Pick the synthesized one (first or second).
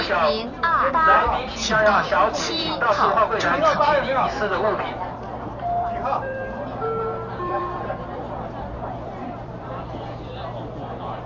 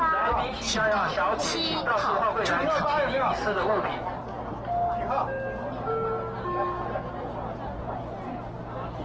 first